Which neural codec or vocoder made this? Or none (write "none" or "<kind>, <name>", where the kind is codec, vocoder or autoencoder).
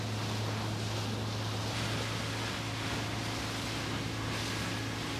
none